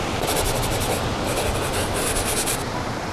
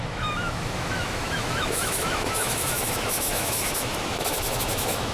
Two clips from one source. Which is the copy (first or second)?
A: second